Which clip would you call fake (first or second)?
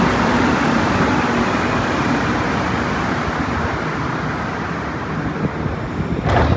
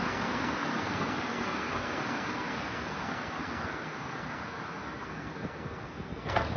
second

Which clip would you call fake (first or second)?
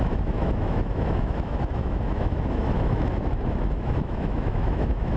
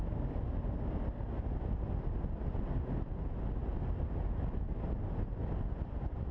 first